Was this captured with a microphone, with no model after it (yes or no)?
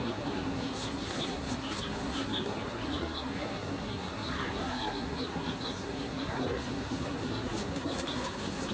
no